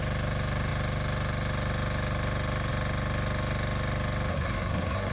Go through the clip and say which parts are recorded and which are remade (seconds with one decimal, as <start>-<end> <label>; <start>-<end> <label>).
0.0-4.3 recorded; 4.3-5.1 remade